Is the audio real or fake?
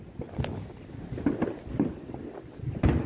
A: real